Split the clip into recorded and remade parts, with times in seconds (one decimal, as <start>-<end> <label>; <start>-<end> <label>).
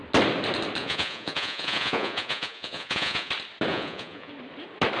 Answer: 0.0-0.8 recorded; 0.8-3.3 remade; 3.3-3.7 recorded; 3.7-4.3 remade; 4.3-5.0 recorded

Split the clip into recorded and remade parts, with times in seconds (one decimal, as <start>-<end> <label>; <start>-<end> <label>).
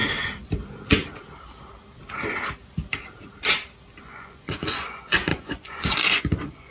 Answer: 0.0-4.0 recorded; 4.0-6.7 remade